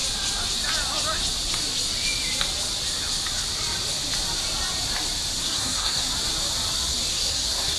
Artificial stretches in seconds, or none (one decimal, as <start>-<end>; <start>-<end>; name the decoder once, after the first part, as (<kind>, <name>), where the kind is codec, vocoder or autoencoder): 5.4-6.0 (codec, SNAC); 7.1-7.8